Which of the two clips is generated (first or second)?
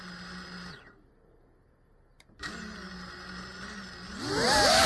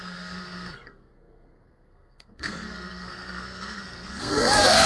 second